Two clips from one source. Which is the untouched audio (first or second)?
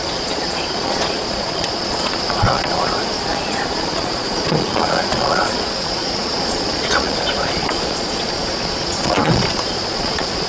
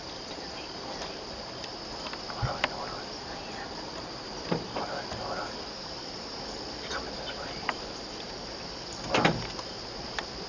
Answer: second